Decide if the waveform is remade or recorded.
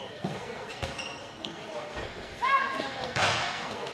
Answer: remade